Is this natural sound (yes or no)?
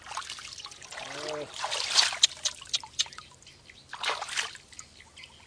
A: yes